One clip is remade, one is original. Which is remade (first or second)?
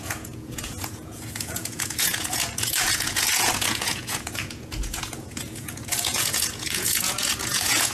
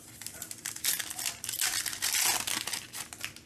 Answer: first